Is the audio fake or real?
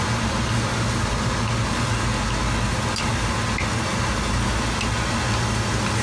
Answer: real